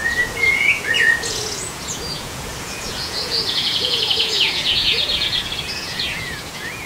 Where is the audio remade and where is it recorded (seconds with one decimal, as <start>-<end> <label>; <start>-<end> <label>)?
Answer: 0.0-6.9 remade